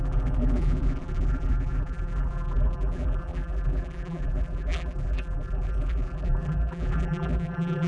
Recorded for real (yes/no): no